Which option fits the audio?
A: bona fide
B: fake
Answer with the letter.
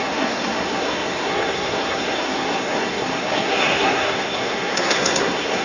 B